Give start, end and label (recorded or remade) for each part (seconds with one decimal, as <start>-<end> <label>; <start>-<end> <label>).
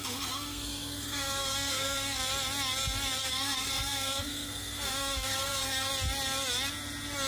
0.0-2.2 remade; 2.2-3.2 recorded; 3.2-5.9 remade; 5.9-7.3 recorded